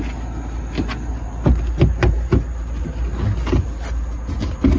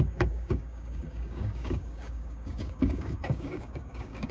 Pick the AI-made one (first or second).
second